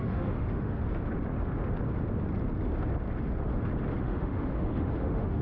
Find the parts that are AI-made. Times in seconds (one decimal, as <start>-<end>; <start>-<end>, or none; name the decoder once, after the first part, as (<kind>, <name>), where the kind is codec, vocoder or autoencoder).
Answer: 0.0-0.8 (autoencoder, DAC-VAE); 4.0-5.4